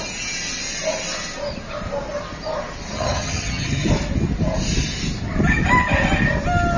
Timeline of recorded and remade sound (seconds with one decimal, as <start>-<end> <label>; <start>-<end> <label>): 0.0-2.9 recorded; 2.9-3.9 remade; 3.9-6.8 recorded